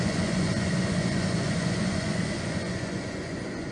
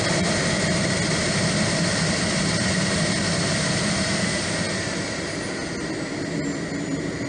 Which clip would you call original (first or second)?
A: second